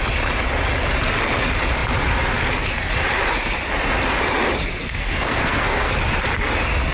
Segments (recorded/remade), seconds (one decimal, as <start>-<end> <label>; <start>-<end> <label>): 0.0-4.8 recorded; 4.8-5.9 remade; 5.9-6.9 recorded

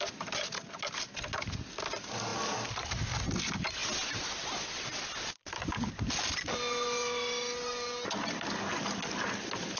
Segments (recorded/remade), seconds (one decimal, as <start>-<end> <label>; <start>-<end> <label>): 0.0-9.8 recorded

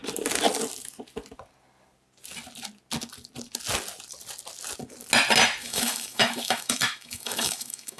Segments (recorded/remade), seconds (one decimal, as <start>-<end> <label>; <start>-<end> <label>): 0.0-5.6 recorded; 5.6-8.0 remade

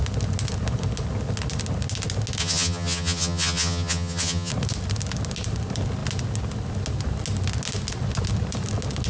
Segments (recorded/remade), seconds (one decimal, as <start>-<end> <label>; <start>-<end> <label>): 0.0-2.4 recorded; 2.4-4.5 remade; 4.5-9.1 recorded

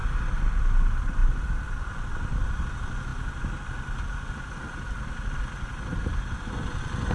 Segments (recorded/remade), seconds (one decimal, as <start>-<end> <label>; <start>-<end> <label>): 0.0-7.1 recorded

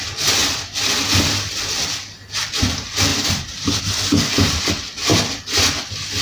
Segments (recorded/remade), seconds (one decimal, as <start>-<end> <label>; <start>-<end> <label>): 0.0-0.4 recorded; 0.4-2.6 remade; 2.6-3.1 recorded; 3.1-3.8 remade; 3.8-6.2 recorded